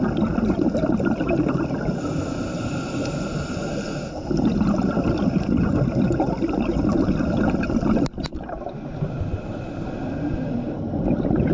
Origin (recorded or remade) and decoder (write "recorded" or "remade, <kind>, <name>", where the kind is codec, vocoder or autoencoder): recorded